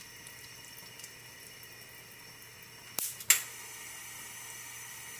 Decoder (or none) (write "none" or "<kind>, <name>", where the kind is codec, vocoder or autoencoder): none